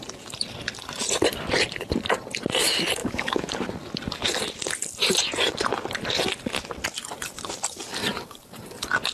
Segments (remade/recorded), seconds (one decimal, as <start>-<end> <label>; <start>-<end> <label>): 0.0-3.0 recorded; 3.0-3.5 remade; 3.5-9.1 recorded